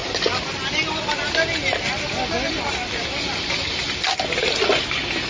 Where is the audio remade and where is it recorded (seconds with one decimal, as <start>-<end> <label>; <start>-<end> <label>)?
0.0-5.3 recorded